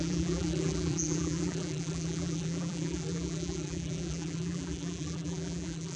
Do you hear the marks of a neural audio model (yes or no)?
yes